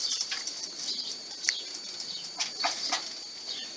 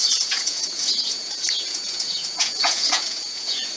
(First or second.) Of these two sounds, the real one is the first